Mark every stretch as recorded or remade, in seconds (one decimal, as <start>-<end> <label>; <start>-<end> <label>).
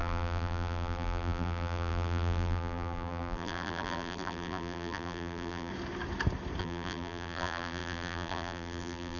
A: 0.0-5.7 remade; 5.7-6.6 recorded; 6.6-9.2 remade